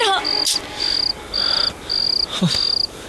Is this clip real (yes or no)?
yes